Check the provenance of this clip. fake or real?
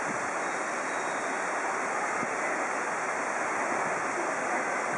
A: real